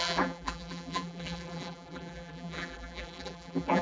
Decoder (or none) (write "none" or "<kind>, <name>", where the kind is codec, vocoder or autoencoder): vocoder, BigVGAN v2